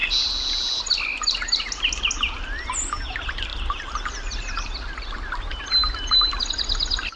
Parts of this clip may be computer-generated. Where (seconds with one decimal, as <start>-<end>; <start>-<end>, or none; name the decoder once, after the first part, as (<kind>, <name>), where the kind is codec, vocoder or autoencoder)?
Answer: none